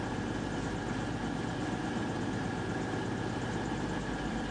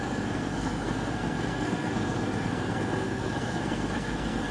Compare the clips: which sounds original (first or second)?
first